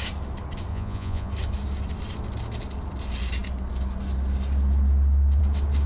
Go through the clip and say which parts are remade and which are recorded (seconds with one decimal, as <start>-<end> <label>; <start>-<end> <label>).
0.0-0.7 recorded; 0.7-1.3 remade; 1.3-5.9 recorded